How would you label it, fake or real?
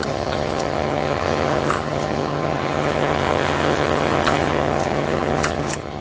fake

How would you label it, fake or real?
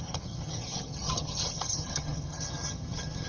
fake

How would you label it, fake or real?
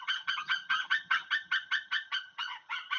fake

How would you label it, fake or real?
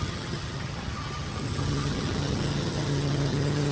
fake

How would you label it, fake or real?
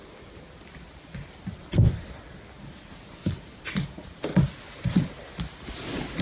real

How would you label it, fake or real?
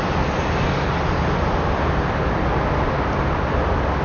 real